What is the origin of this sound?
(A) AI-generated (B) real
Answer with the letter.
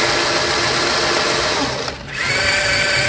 B